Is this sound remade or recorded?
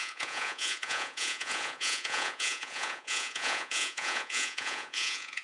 remade